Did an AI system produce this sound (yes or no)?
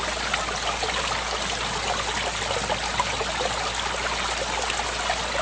no